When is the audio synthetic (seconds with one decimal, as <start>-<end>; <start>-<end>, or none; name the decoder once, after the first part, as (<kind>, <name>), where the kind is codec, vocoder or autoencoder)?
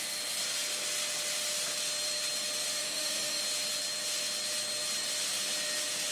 2.8-3.4 (autoencoder, DAC-VAE)